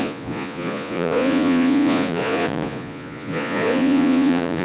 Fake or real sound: fake